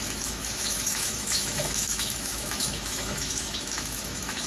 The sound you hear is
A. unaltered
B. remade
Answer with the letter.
B